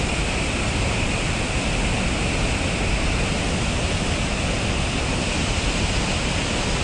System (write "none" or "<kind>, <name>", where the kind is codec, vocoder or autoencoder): none